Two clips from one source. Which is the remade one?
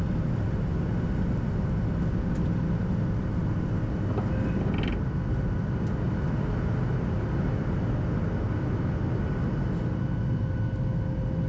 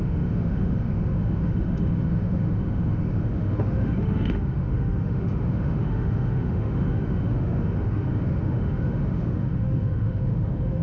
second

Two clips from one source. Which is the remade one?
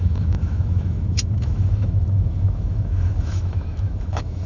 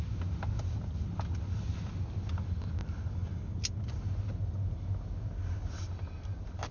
first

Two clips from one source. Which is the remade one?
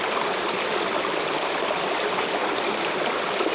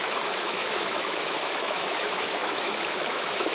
second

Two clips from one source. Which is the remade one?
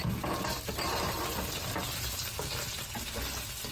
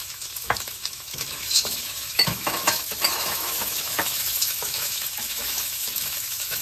second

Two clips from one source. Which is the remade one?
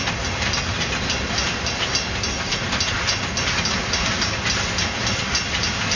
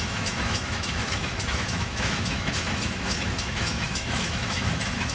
second